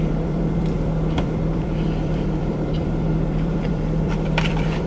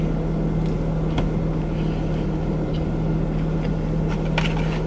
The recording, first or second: second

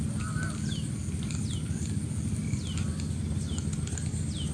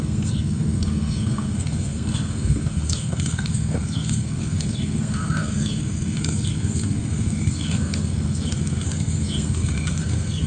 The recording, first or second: first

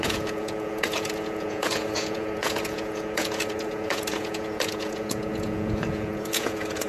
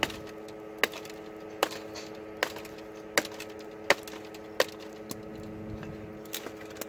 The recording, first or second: second